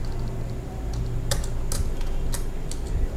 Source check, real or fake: real